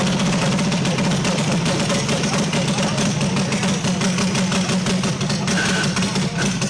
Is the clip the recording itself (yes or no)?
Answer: yes